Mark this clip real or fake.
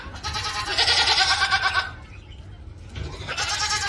real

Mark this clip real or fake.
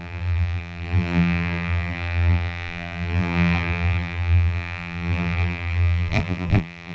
fake